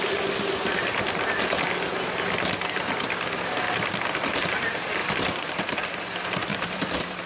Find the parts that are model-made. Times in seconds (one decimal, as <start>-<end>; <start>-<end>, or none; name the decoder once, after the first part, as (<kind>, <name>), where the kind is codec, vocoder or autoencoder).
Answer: 5.0-5.8 (vocoder, BigVGAN v2); 6.5-7.3